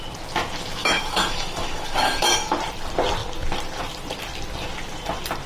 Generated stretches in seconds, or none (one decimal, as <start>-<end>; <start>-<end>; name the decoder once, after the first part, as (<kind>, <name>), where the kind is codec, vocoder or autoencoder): 0.8-2.3 (autoencoder, DAC-VAE)